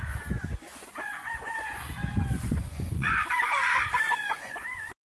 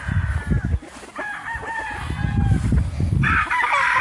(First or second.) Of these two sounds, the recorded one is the second